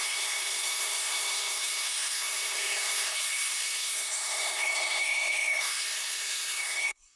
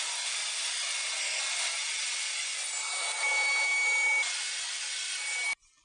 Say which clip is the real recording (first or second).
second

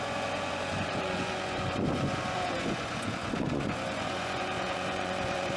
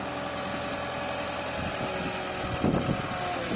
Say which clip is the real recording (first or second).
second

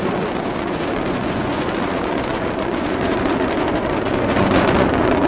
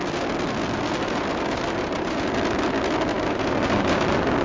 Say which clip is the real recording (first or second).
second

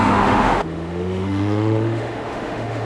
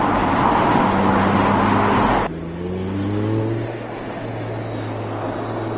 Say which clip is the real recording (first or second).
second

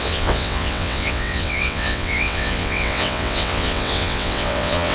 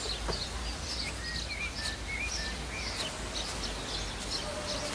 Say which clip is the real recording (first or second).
second